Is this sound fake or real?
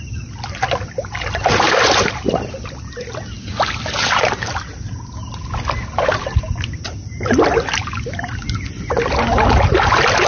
real